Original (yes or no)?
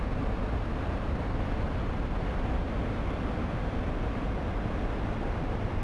yes